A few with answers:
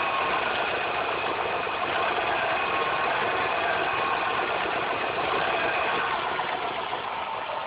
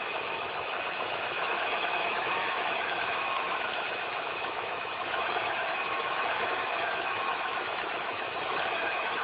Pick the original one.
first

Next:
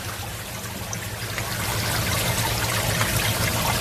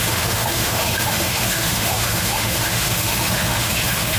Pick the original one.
first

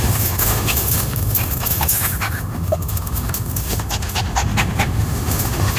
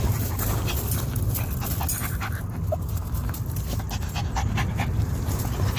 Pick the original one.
second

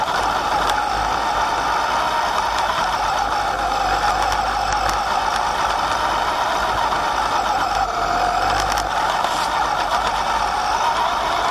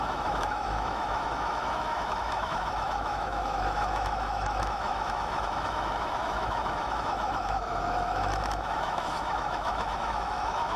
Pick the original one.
first